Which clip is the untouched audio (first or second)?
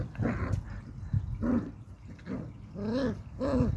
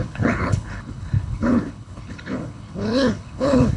first